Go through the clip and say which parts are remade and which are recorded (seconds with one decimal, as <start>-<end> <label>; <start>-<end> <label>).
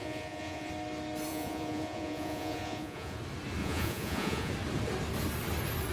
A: 0.0-0.7 remade; 0.7-1.3 recorded; 1.3-3.2 remade; 3.2-3.6 recorded; 3.6-4.5 remade; 4.5-5.9 recorded